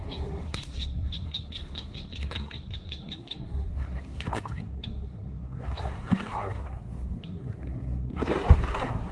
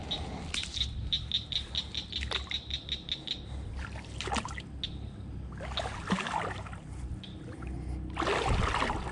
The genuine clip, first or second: second